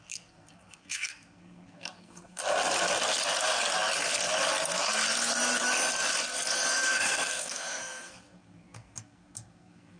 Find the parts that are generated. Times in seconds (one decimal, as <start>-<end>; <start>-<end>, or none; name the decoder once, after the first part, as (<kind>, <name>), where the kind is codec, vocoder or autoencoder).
0.0-2.4 (codec, SNAC); 6.7-10.0